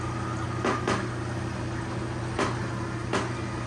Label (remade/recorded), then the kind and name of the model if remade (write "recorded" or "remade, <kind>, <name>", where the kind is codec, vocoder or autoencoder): recorded